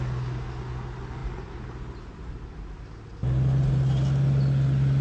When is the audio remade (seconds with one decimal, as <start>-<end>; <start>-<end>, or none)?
none